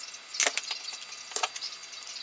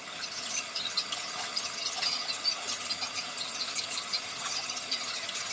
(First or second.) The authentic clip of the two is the first